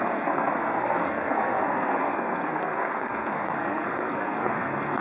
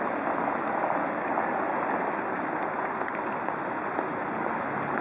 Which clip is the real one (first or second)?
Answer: second